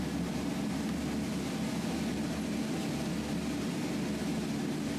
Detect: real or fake real